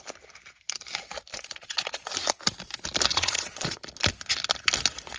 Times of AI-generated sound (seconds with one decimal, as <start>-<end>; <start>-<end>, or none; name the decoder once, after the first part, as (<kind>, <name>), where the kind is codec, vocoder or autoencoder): 1.3-2.0 (vocoder, Vocos); 3.1-3.8

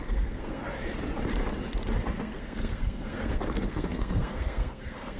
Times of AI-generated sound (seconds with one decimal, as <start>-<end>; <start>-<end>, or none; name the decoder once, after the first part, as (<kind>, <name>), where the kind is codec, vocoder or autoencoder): 0.0-0.6 (codec, SNAC); 2.1-5.2

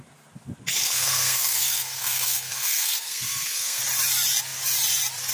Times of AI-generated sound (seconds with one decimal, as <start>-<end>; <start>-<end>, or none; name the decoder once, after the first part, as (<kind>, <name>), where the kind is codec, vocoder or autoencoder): 0.8-3.8 (codec, SNAC)

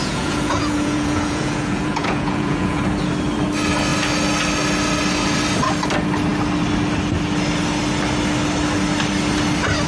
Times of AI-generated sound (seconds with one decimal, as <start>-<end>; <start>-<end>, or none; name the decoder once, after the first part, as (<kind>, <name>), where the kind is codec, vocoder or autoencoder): 0.0-2.8 (vocoder, Vocos)